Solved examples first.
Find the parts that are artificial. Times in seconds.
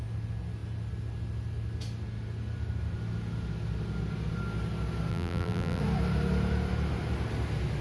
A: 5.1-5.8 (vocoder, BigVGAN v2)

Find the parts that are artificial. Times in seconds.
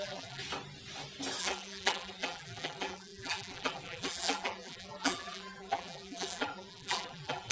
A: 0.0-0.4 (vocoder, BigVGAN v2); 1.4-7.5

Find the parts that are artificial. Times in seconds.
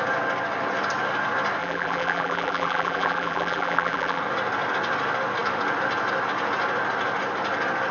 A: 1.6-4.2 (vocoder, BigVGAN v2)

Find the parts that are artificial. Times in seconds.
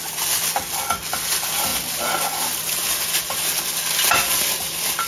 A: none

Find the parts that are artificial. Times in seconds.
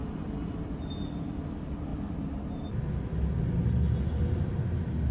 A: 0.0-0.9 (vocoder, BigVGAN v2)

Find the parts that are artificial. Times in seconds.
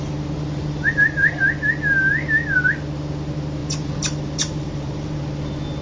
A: 0.6-1.4 (vocoder, BigVGAN v2); 3.6-5.2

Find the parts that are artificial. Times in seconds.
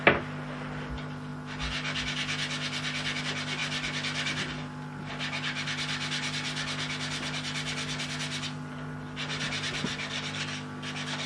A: none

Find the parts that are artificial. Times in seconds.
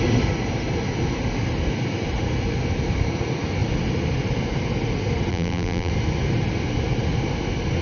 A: 5.3-5.9 (vocoder, BigVGAN v2)